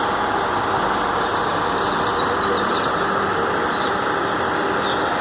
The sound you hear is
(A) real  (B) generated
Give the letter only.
A